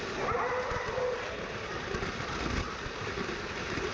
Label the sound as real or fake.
real